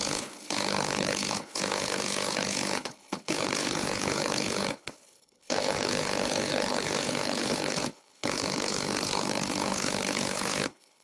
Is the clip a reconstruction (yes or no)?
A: yes